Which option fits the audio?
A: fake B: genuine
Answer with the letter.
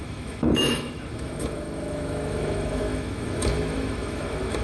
A